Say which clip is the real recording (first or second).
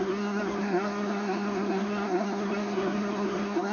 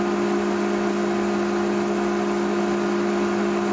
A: second